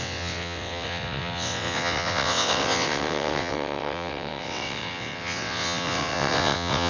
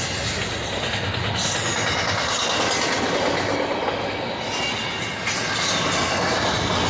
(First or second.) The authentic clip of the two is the second